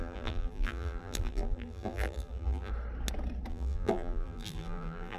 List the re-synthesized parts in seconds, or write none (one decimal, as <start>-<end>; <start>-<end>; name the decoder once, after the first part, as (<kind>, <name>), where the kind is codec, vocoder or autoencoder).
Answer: 0.0-2.7 (vocoder, BigVGAN v2); 3.5-5.2